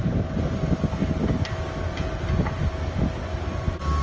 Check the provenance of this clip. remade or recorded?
recorded